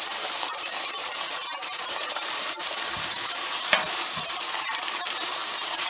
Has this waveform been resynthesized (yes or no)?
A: yes